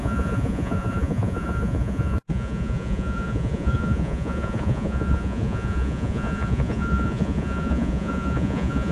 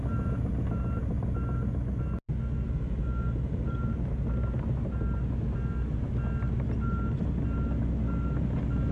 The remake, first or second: first